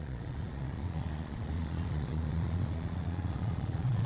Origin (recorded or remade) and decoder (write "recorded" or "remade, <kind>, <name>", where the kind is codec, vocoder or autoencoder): remade, vocoder, Vocos